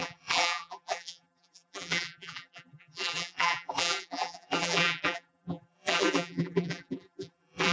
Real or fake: fake